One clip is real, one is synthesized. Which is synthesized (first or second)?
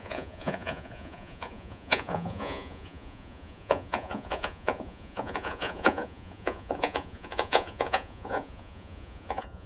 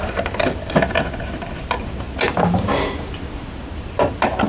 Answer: first